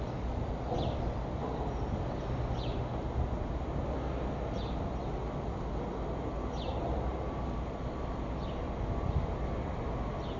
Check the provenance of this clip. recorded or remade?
recorded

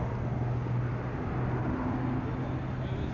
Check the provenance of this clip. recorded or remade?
recorded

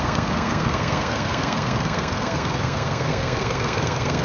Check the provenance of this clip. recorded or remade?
remade